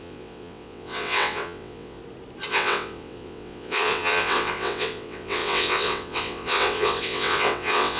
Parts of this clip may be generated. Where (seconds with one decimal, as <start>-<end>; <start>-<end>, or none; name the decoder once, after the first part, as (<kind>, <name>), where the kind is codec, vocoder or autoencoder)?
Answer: 0.0-2.0 (vocoder, WaveNeXt); 2.5-8.0